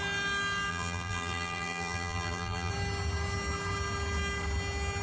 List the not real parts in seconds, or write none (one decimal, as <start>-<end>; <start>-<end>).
0.7-2.7